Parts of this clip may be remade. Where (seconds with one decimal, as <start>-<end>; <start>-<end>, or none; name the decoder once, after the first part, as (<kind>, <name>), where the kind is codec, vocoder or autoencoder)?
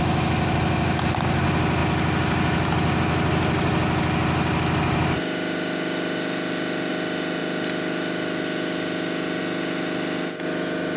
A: none